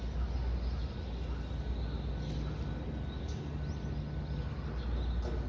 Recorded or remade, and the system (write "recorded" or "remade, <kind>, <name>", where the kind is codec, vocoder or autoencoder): recorded